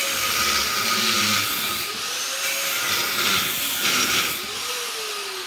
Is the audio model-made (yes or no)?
no